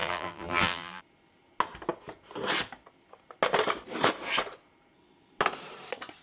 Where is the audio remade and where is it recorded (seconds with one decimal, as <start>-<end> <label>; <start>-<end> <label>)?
0.0-1.0 remade; 1.0-6.2 recorded